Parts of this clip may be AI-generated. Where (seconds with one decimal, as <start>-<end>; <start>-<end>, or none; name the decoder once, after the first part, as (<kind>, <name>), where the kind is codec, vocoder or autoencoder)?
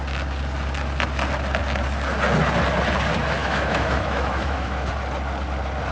3.4-4.9 (autoencoder, DAC-VAE)